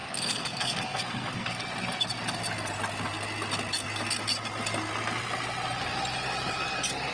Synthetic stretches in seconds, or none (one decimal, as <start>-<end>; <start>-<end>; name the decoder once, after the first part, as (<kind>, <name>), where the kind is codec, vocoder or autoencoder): 0.0-1.6 (codec, SNAC)